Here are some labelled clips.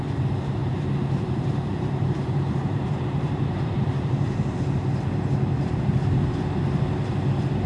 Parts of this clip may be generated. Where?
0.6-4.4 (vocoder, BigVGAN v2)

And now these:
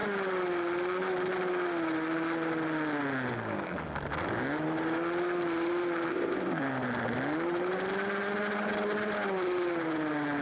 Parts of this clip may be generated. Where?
6.1-6.6 (codec, ZipCodec)

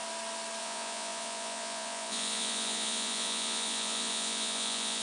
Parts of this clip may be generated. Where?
0.6-5.0 (vocoder, Vocos)

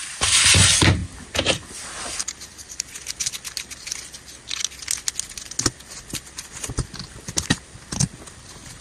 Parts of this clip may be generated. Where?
none